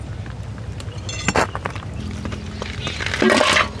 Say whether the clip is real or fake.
real